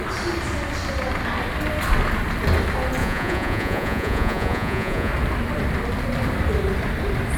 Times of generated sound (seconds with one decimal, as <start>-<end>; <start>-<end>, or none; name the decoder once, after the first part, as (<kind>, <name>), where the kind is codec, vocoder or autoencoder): 3.0-5.1 (vocoder, Vocos)